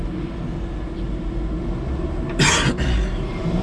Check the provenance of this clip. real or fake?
real